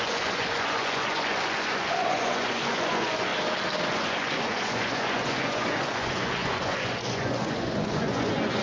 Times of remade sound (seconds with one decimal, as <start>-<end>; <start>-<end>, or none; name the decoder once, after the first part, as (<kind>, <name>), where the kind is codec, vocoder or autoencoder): 0.0-3.3 (vocoder, Vocos); 3.9-8.6